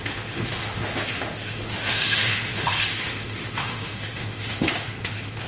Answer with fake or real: fake